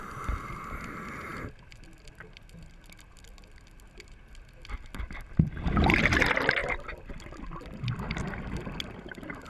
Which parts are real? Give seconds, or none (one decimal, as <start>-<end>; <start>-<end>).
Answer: 0.0-6.6; 8.0-9.5